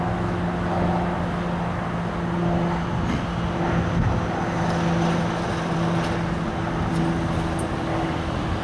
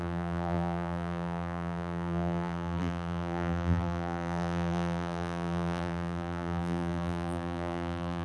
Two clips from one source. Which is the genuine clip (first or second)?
first